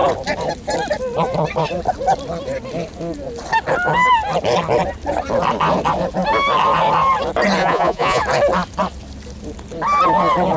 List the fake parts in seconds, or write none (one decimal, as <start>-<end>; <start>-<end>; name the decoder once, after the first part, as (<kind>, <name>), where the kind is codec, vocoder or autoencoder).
7.6-8.2 (vocoder, Vocos)